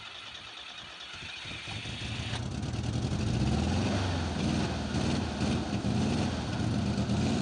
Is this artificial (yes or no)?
no